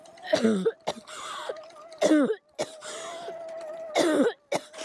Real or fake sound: real